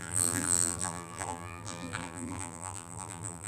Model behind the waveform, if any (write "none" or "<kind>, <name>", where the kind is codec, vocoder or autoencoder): vocoder, BigVGAN v2